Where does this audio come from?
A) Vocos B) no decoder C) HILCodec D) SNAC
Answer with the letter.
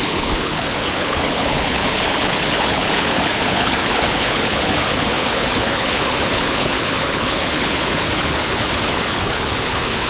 C